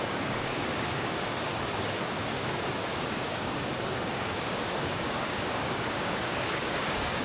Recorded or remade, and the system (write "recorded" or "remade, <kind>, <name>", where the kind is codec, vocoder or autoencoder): remade, codec, DAC